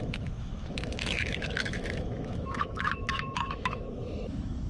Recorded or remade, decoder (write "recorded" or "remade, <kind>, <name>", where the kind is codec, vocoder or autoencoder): remade, autoencoder, DAC-VAE